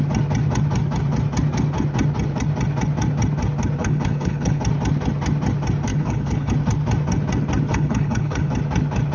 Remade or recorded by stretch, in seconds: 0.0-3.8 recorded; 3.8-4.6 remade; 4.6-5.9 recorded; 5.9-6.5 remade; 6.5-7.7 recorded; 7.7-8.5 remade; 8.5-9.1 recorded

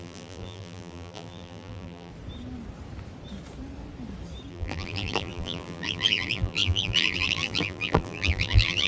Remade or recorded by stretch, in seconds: 0.0-2.1 remade; 2.1-4.5 recorded; 4.5-8.9 remade